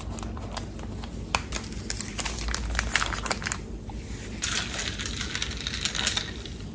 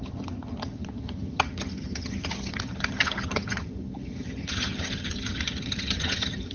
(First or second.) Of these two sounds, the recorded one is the first